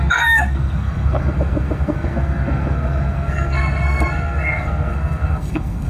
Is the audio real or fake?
fake